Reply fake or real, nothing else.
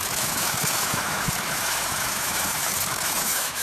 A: fake